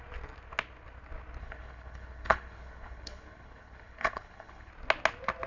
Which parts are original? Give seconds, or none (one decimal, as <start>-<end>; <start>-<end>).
0.0-1.4; 4.7-5.5